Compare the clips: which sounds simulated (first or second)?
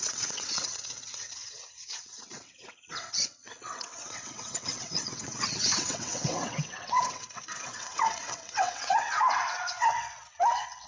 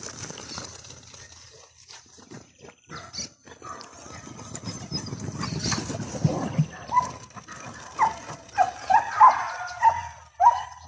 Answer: first